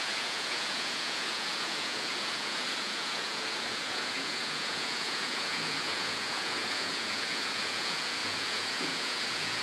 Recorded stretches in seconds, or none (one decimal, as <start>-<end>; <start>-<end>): none